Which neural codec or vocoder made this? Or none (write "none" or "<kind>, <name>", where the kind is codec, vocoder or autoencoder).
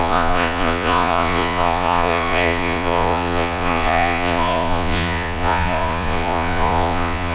vocoder, Vocos